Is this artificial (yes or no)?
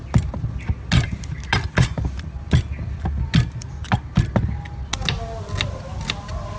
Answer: no